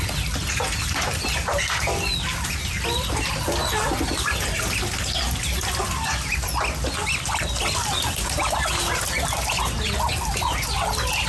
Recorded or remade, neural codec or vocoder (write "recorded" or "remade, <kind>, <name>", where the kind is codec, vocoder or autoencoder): recorded